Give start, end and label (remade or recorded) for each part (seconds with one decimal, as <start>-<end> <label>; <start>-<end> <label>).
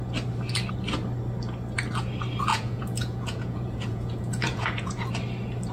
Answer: 0.0-2.5 recorded; 2.5-5.1 remade; 5.1-5.7 recorded